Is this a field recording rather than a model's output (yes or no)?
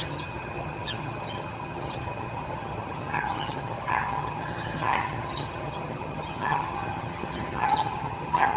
no